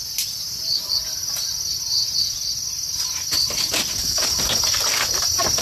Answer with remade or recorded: recorded